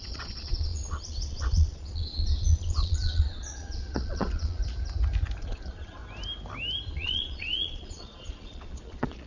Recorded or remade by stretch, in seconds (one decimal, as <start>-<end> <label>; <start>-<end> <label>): 0.0-4.6 remade; 4.6-5.4 recorded; 5.4-6.0 remade; 6.0-6.9 recorded; 6.9-9.3 remade